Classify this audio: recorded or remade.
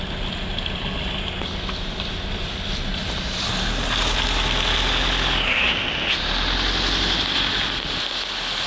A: recorded